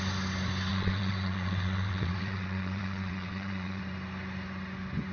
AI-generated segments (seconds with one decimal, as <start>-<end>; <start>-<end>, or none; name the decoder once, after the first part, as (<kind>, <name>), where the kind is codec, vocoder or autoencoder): 0.7-3.8 (vocoder, WaveNeXt)